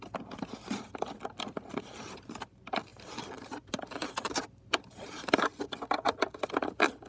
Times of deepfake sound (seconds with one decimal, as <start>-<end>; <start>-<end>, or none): 2.9-5.6